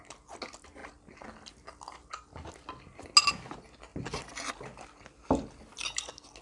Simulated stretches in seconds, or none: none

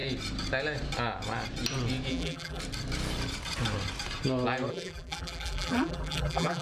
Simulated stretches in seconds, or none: 2.1-2.6 (vocoder, BigVGAN v2); 4.7-6.6

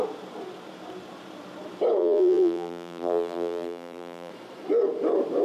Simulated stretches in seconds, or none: 2.0-4.3 (vocoder, BigVGAN v2)

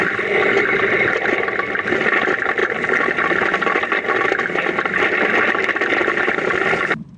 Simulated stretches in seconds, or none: none

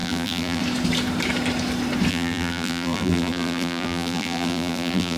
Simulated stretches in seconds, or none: 0.0-0.6 (vocoder, BigVGAN v2); 2.1-5.2

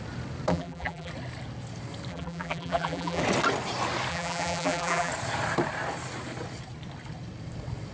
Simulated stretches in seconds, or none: 0.5-1.1 (vocoder, BigVGAN v2); 2.1-3.2; 4.1-5.1

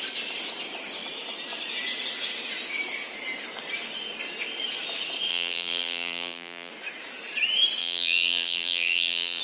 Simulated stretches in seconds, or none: 5.3-6.7 (vocoder, BigVGAN v2); 7.8-9.4